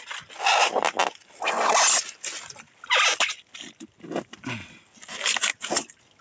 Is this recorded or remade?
recorded